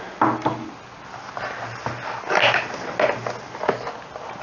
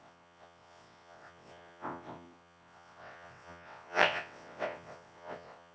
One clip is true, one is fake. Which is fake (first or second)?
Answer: second